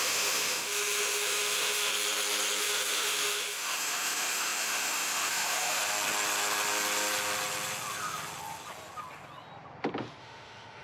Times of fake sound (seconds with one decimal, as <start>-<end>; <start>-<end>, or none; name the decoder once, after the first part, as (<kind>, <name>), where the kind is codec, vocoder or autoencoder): 0.0-1.9 (autoencoder, DAC-VAE); 2.6-5.8; 10.2-10.8